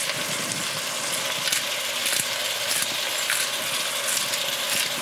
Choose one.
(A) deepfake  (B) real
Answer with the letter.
B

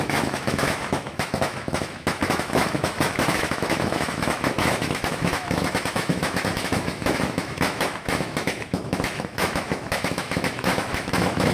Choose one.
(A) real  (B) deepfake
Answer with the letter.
B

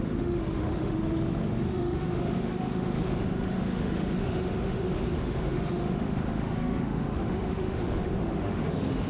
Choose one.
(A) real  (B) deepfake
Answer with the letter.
B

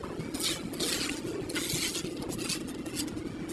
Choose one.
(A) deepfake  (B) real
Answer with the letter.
B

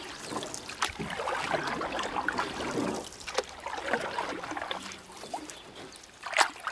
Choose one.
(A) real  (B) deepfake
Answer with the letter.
A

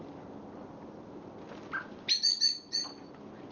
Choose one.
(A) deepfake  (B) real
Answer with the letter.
B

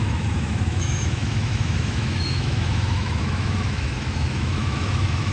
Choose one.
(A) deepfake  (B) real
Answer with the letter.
A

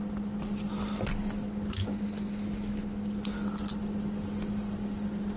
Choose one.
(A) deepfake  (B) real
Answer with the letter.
B